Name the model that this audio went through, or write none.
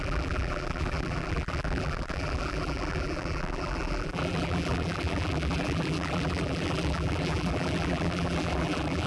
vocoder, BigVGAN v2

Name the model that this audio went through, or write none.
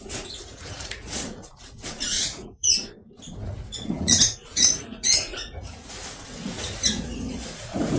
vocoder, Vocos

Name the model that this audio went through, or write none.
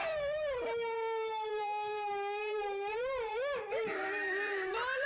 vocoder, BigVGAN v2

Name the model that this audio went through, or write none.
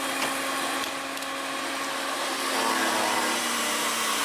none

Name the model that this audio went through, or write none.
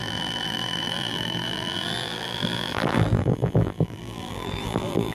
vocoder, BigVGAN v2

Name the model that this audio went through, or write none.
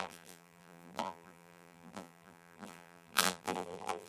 vocoder, BigVGAN v2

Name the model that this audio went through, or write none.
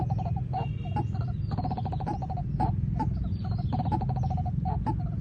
none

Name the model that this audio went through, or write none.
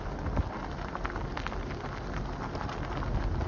none